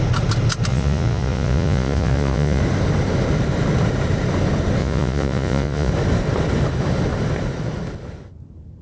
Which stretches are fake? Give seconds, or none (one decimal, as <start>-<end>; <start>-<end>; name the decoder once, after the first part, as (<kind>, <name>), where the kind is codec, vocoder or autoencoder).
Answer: 0.7-2.6 (vocoder, Vocos); 4.8-5.9